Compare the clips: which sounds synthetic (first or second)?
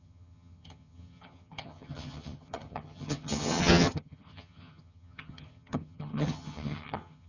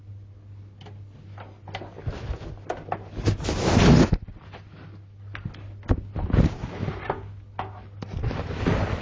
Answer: first